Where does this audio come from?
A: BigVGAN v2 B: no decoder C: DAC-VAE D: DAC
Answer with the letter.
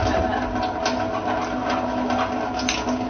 B